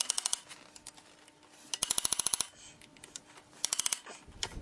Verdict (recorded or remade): recorded